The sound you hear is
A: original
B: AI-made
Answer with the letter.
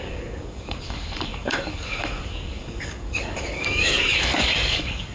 B